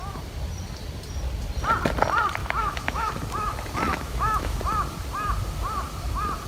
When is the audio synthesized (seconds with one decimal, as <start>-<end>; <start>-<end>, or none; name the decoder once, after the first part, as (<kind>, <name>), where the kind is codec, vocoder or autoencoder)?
2.4-3.1 (autoencoder, DAC-VAE); 3.9-4.6